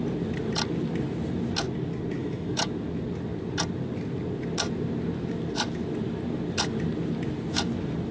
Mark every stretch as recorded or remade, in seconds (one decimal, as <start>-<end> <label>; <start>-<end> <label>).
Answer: 0.0-2.2 recorded; 2.2-2.7 remade; 2.7-8.1 recorded